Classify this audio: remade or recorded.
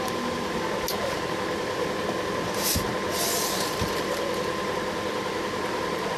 remade